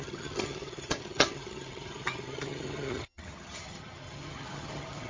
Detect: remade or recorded remade